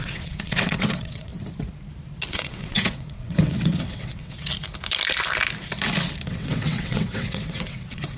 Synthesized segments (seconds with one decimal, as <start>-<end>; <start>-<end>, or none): 0.0-1.3; 2.3-4.5; 6.3-8.2